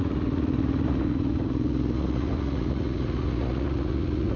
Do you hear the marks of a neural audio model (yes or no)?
yes